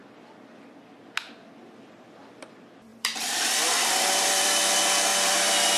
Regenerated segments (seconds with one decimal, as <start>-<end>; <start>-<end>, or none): 1.6-5.8